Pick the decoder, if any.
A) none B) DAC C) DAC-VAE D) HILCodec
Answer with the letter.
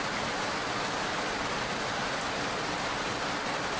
A